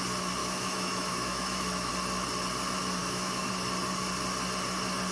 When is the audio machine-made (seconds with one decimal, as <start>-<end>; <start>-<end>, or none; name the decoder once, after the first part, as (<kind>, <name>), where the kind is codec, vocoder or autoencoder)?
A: 0.4-1.9 (autoencoder, DAC-VAE); 3.0-3.5